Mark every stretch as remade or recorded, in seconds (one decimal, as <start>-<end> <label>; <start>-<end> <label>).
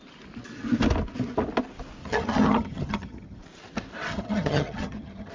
0.0-2.0 recorded; 2.0-3.4 remade; 3.4-4.1 recorded; 4.1-5.3 remade